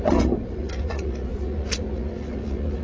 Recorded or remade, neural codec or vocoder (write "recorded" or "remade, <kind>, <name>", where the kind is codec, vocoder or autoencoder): remade, vocoder, Vocos